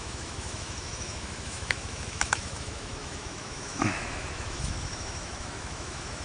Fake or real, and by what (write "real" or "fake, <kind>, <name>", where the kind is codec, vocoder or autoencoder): fake, autoencoder, DAC-VAE